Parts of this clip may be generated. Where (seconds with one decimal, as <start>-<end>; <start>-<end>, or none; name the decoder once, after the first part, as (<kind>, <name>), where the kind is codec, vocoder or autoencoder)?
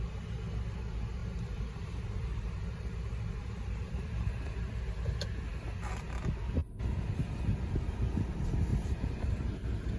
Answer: 1.2-3.9 (vocoder, BigVGAN v2); 8.7-10.0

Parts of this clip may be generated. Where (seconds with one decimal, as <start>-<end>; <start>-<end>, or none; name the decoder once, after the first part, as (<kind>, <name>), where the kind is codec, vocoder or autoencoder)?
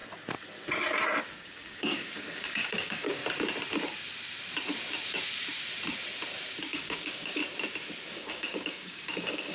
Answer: 1.2-3.2 (codec, DAC); 6.6-7.4; 8.1-9.5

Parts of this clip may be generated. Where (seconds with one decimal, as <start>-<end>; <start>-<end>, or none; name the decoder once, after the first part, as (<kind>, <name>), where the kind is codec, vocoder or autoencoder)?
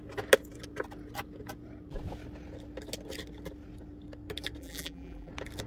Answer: 4.6-5.3 (vocoder, BigVGAN v2)